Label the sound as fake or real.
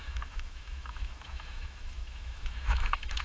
fake